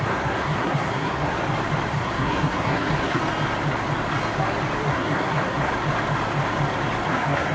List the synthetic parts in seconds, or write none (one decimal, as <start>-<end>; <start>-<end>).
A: 0.0-1.4; 1.9-3.2; 4.9-5.7; 7.1-7.5